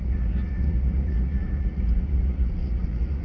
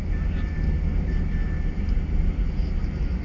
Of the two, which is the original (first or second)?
second